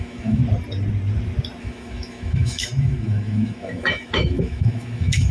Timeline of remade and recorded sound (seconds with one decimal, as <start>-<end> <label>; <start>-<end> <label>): 0.0-0.4 remade; 0.4-1.6 recorded; 1.6-5.3 remade